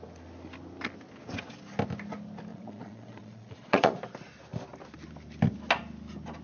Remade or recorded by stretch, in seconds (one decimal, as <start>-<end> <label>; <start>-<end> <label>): 0.0-2.5 recorded; 2.5-4.0 remade; 4.0-6.4 recorded